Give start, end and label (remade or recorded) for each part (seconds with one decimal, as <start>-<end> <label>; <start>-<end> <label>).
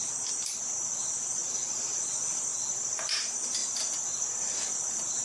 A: 0.0-5.2 recorded